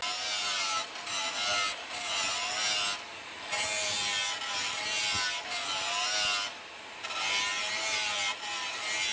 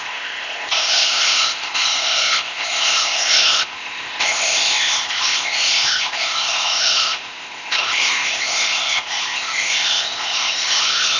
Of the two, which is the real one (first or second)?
first